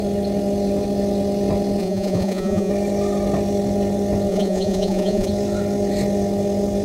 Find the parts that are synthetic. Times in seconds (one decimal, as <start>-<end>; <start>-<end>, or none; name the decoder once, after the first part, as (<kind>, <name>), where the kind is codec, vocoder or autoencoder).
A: 1.8-2.7 (vocoder, Vocos); 4.3-5.3